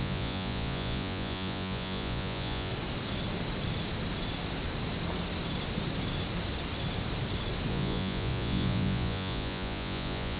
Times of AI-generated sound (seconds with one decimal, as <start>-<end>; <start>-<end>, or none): 0.0-2.7; 7.7-10.4